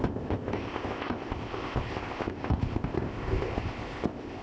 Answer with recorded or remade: remade